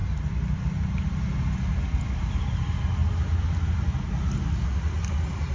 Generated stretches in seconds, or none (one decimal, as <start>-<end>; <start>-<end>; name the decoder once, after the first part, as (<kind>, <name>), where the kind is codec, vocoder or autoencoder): none